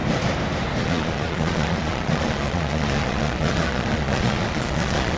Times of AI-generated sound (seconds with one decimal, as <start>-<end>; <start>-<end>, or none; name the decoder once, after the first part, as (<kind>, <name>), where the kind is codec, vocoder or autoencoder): 0.8-5.2 (vocoder, Vocos)